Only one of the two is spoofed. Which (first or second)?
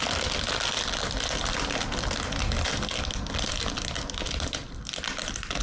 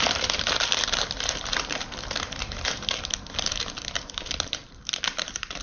second